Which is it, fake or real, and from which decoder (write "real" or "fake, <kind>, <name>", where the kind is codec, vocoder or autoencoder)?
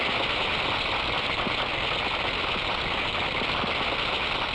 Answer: real